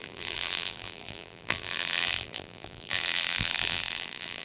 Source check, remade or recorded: remade